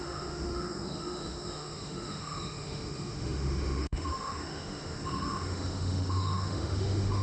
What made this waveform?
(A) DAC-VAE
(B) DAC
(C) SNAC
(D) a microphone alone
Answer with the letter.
A